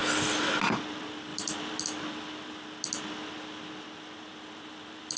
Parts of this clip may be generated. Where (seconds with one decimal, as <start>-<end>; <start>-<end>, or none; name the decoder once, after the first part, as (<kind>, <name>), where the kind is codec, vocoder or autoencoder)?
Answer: 1.3-1.8 (vocoder, BigVGAN v2); 4.3-5.2